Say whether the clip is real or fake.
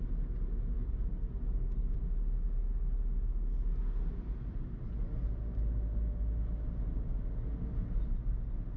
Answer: real